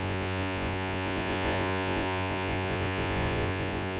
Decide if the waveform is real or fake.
fake